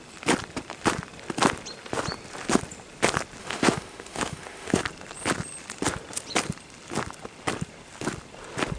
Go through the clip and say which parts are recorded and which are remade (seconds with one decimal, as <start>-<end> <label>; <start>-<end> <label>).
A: 0.0-3.4 recorded; 3.4-4.8 remade; 4.8-8.8 recorded